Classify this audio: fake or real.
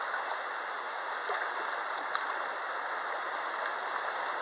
real